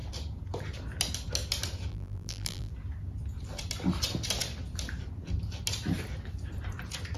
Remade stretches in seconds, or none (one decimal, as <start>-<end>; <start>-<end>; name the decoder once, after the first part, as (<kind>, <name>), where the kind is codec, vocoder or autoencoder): 1.9-2.7 (vocoder, BigVGAN v2)